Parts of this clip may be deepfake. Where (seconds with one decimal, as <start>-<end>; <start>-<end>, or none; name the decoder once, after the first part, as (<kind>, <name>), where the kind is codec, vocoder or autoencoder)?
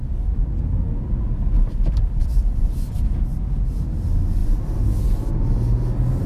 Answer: 2.2-3.2 (vocoder, BigVGAN v2); 4.4-5.3